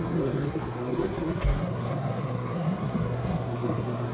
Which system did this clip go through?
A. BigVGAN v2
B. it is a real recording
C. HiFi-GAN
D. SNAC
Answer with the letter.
D